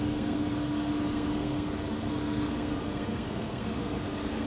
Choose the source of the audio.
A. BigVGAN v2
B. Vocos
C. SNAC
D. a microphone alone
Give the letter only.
C